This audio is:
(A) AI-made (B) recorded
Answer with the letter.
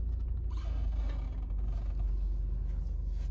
B